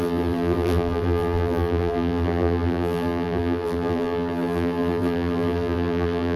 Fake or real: fake